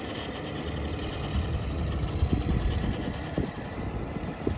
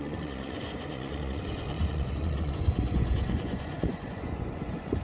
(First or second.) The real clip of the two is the first